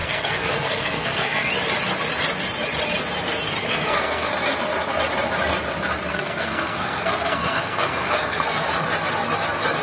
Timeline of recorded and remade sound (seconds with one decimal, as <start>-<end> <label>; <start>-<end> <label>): 0.0-1.5 remade; 1.5-3.6 recorded; 3.6-4.3 remade; 4.3-6.1 recorded; 6.1-8.7 remade; 8.7-9.8 recorded

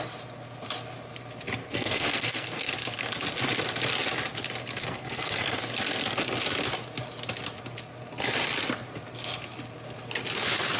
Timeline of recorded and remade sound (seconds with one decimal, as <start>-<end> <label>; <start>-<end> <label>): 0.0-1.6 recorded; 1.6-2.7 remade; 2.7-4.8 recorded; 4.8-5.6 remade; 5.6-10.8 recorded